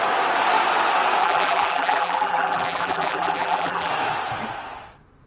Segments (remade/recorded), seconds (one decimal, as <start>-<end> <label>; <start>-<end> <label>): 0.0-1.2 recorded; 1.2-3.9 remade; 3.9-5.3 recorded